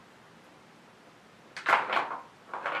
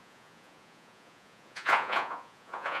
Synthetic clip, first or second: second